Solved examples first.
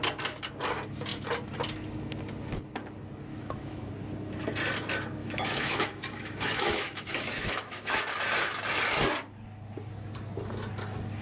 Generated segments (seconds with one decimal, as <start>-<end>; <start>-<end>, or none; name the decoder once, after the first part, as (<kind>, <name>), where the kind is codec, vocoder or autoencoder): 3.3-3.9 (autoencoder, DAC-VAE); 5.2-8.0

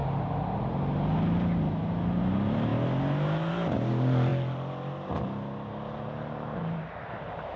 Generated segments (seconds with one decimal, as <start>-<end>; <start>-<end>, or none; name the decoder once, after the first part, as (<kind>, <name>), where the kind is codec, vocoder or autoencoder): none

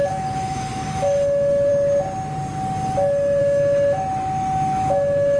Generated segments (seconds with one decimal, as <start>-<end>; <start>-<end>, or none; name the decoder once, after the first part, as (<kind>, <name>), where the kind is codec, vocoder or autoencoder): 0.0-1.7 (autoencoder, DAC-VAE); 3.4-5.4